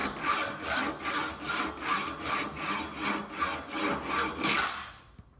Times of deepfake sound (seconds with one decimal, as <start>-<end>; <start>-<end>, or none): none